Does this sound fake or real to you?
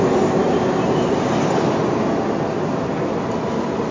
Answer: real